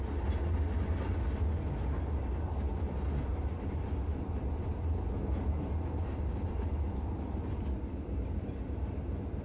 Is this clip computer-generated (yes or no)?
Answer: no